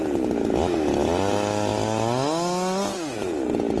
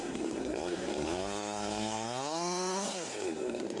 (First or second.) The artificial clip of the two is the second